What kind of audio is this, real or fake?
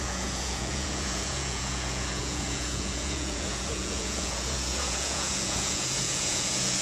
fake